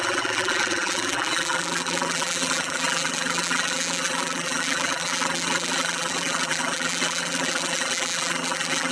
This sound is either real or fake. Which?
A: fake